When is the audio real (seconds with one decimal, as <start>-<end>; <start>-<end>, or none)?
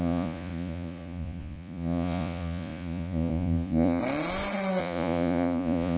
4.0-4.8